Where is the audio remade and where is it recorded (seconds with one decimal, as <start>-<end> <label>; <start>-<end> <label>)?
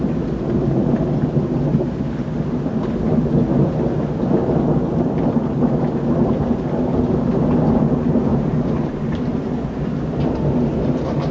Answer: 0.0-8.3 recorded; 8.3-9.3 remade; 9.3-11.3 recorded